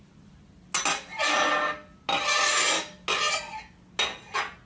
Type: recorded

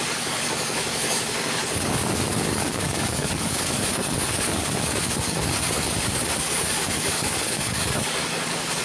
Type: remade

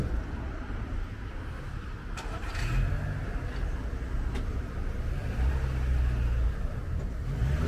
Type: recorded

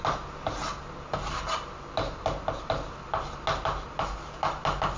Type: recorded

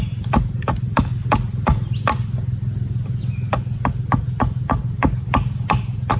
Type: recorded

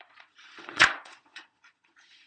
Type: remade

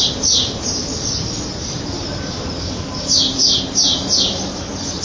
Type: remade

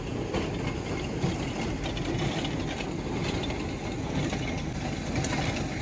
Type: recorded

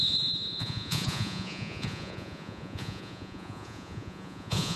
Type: remade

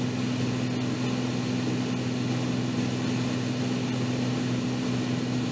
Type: recorded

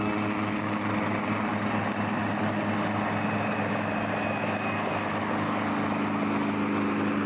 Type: recorded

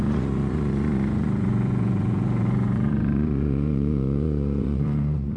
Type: remade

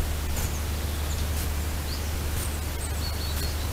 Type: recorded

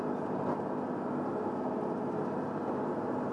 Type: recorded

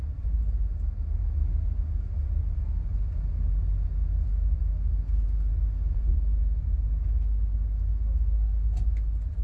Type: recorded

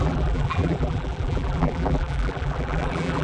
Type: remade